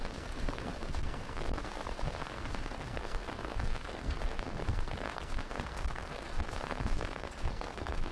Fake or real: fake